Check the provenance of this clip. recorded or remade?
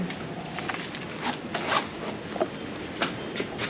recorded